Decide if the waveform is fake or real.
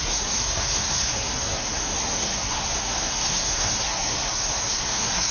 fake